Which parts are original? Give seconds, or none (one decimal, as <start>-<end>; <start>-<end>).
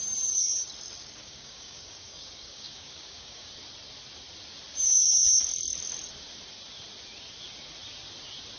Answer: 0.0-1.0; 3.5-8.6